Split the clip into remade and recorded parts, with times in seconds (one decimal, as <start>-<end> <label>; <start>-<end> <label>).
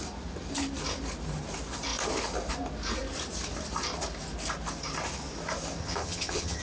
0.0-5.8 recorded; 5.8-6.6 remade